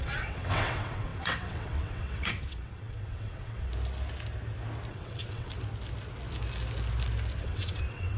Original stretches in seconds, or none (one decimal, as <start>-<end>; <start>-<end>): 3.7-4.9; 5.5-7.4